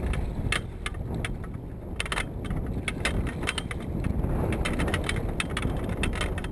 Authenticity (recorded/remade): recorded